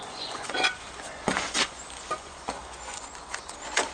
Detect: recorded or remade remade